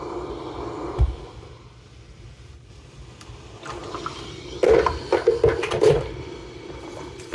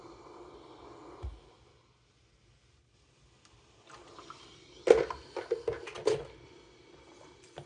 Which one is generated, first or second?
first